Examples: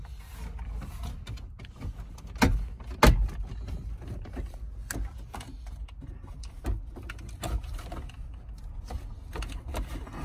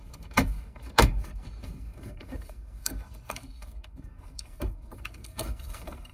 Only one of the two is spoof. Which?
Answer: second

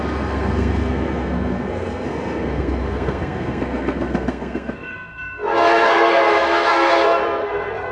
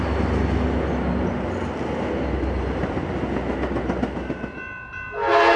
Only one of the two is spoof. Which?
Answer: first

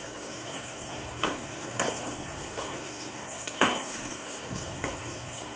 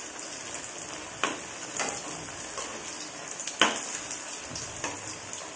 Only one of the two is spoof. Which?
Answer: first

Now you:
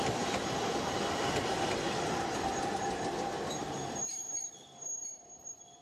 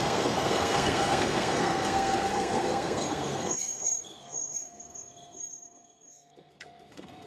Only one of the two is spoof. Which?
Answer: second